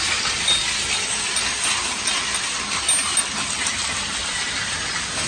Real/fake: real